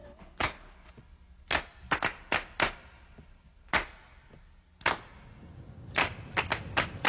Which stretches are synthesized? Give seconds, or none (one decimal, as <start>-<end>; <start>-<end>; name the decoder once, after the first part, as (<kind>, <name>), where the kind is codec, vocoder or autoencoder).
0.0-0.9 (codec, HILCodec)